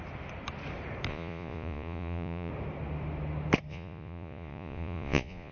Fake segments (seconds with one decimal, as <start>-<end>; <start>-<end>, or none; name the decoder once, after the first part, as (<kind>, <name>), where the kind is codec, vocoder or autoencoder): 1.1-2.5 (vocoder, Vocos); 3.7-5.5